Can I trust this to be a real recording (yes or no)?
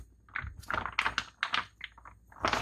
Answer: yes